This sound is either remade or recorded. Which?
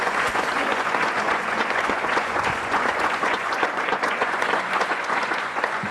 remade